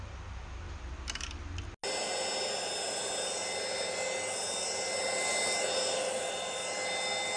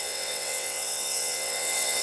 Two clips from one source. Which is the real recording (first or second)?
first